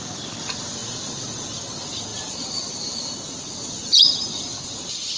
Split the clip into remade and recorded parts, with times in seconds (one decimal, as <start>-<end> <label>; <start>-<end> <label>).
0.0-5.2 recorded